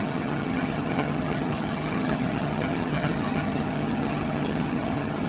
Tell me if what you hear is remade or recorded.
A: remade